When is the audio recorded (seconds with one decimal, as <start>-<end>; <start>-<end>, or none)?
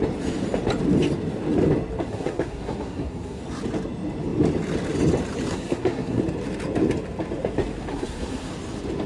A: 0.0-2.1; 3.4-5.5; 6.2-7.9; 8.5-9.1